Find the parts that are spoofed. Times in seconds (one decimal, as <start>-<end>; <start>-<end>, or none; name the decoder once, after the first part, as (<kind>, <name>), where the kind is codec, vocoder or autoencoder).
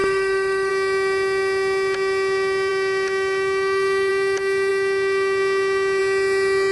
0.0-0.7 (autoencoder, DAC-VAE)